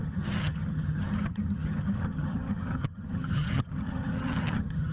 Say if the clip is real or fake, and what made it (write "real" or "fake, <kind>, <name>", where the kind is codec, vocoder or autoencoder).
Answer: fake, vocoder, HiFi-GAN